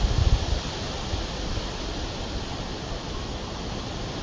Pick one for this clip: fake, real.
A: real